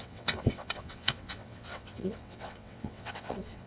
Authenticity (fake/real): fake